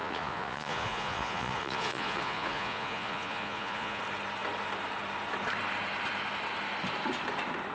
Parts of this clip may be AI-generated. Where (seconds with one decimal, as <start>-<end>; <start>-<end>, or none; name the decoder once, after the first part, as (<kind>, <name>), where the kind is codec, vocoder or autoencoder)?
0.0-4.0 (vocoder, Vocos)